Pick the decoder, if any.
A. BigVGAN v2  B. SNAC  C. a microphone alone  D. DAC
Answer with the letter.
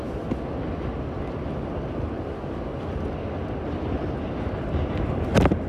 C